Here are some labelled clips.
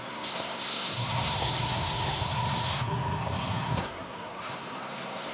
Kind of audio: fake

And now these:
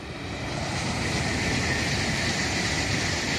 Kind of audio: fake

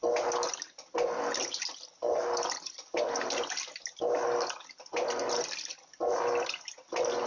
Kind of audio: real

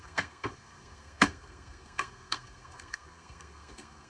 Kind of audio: fake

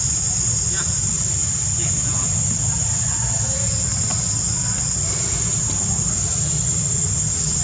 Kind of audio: real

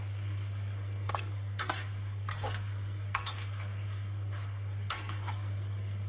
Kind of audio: fake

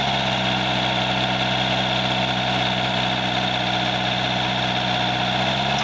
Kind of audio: real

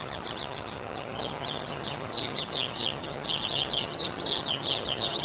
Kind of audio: fake